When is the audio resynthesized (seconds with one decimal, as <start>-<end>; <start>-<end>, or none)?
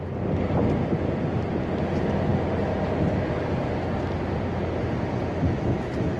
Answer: none